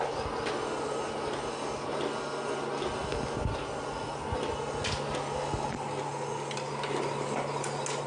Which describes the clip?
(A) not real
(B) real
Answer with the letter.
B